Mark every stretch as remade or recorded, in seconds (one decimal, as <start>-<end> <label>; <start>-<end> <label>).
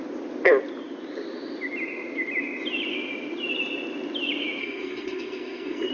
0.0-4.6 recorded; 4.6-5.9 remade